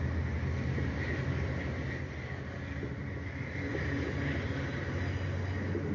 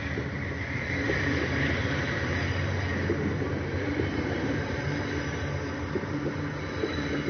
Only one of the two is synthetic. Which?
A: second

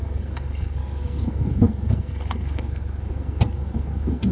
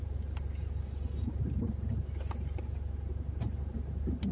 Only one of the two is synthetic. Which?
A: first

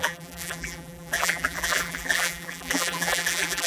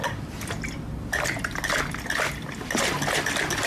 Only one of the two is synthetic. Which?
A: first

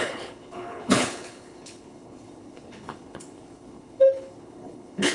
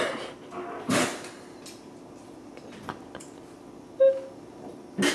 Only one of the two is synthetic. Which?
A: first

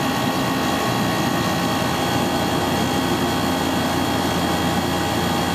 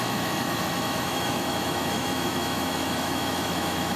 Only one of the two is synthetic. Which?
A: second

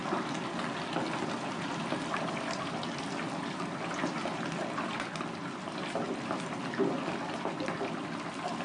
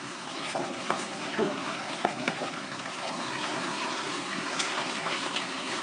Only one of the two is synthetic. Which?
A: second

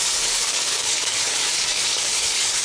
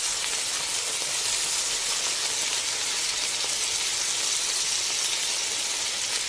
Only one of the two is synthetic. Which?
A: first